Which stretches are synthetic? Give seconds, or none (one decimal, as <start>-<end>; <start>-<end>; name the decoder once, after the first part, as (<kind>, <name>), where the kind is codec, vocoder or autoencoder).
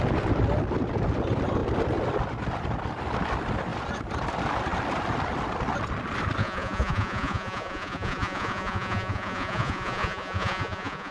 6.4-11.1 (vocoder, Vocos)